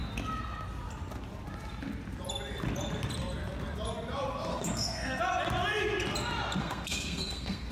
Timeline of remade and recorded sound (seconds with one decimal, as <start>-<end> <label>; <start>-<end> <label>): 0.0-4.5 recorded; 4.5-5.2 remade; 5.2-6.6 recorded; 6.6-7.7 remade